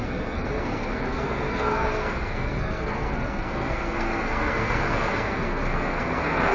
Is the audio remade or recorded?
remade